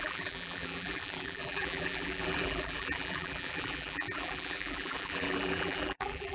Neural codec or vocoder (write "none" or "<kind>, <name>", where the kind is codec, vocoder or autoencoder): vocoder, BigVGAN v2